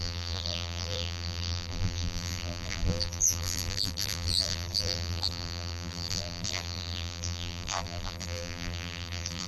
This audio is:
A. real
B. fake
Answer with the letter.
B